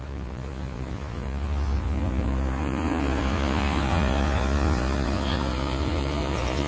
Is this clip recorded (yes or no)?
no